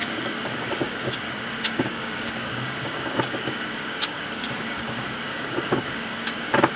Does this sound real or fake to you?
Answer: fake